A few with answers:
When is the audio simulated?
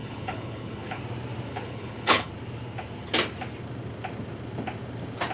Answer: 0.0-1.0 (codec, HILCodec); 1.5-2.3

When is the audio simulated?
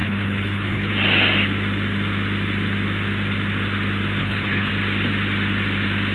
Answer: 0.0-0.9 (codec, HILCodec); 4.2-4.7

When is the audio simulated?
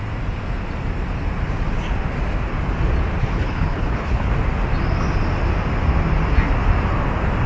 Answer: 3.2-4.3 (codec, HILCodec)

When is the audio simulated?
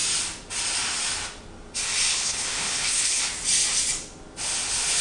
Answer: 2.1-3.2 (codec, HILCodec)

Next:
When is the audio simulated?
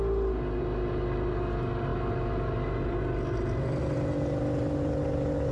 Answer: none